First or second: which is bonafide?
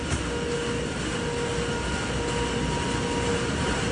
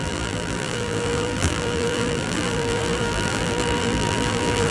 first